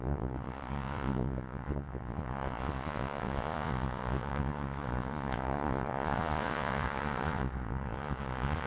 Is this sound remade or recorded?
remade